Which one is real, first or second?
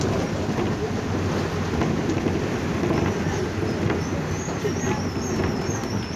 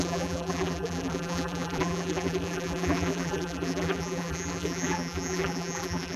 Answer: first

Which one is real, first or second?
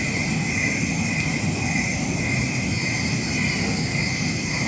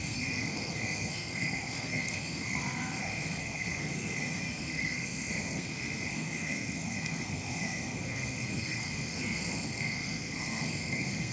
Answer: first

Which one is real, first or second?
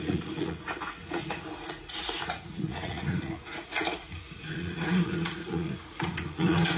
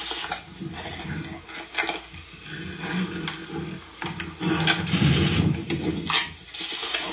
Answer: second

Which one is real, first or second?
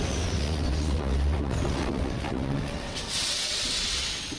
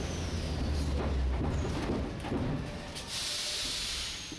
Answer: second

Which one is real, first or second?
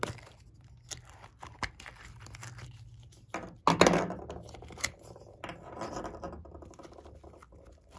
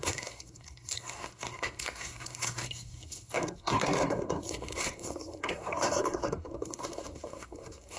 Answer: first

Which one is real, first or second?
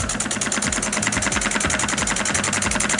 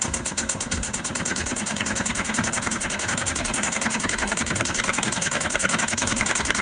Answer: first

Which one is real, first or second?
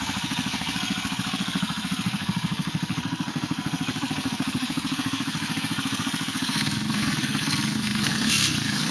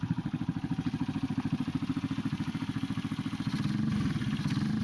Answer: second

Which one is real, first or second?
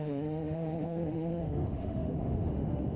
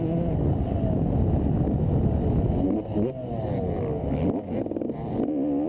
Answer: second